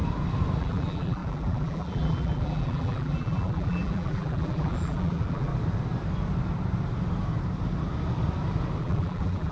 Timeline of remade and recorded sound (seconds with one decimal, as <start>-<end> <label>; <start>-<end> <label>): 0.0-0.6 recorded; 0.6-5.5 remade; 5.5-8.8 recorded; 8.8-9.5 remade